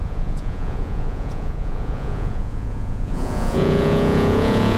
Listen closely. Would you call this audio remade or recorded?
remade